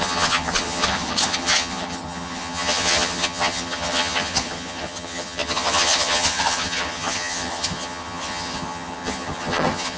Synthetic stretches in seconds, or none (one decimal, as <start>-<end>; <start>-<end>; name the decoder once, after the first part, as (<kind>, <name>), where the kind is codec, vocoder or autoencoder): 0.0-10.0 (vocoder, HiFi-GAN)